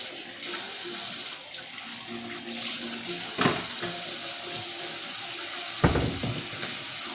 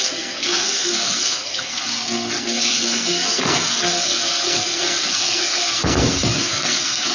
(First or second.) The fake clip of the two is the second